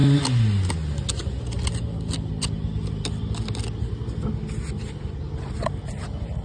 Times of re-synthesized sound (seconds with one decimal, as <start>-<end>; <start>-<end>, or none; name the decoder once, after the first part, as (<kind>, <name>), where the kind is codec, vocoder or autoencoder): none